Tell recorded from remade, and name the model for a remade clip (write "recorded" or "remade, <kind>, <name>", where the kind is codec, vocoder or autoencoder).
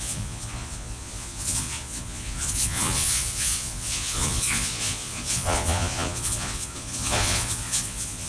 remade, vocoder, Vocos